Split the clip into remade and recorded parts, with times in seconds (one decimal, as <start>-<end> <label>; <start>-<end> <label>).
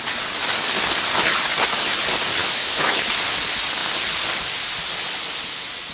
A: 0.0-2.4 recorded; 2.4-3.1 remade; 3.1-5.9 recorded